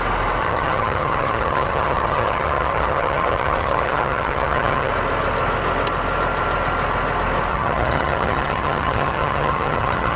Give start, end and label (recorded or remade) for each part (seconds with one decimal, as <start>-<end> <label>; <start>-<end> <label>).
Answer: 0.0-0.4 recorded; 0.4-4.9 remade; 4.9-7.5 recorded; 7.5-10.2 remade